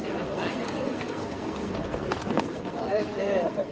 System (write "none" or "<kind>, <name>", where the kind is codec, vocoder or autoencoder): codec, SNAC